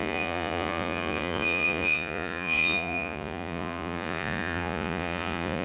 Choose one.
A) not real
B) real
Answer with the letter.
A